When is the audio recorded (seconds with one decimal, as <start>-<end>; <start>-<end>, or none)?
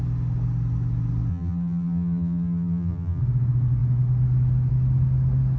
0.0-1.3; 3.2-5.6